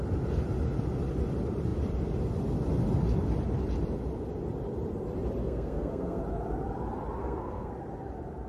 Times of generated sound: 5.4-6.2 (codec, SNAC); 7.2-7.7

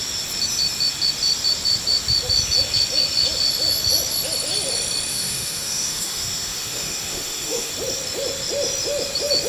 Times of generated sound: 5.1-7.7 (autoencoder, DAC-VAE)